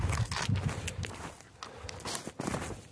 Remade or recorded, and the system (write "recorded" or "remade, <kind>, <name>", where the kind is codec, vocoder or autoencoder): recorded